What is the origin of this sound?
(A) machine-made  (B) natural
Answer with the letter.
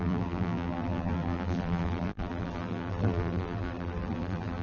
A